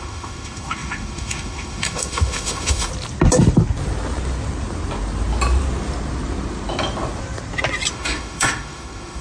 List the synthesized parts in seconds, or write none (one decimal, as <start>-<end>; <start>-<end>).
0.0-2.9; 7.9-9.2